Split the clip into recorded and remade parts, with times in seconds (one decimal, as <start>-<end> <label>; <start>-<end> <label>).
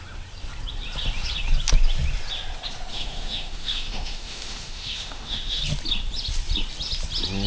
0.0-2.9 recorded; 2.9-5.6 remade; 5.6-7.5 recorded